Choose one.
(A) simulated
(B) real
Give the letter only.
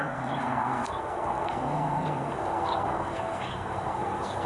A